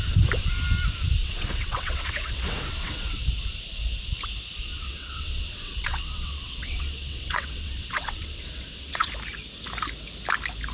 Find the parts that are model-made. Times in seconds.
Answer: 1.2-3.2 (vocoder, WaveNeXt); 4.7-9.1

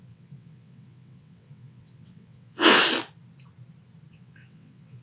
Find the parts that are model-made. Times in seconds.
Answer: 0.0-2.8 (vocoder, WaveNeXt); 4.1-5.0

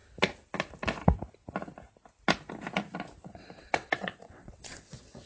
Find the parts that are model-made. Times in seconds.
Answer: 3.2-5.3 (vocoder, WaveNeXt)